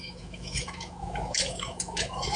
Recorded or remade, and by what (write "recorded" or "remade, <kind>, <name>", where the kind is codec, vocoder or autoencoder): remade, autoencoder, DAC-VAE